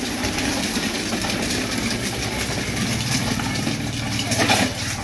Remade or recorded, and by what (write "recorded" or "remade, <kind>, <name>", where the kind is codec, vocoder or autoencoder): recorded